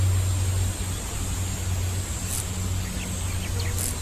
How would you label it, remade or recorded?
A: recorded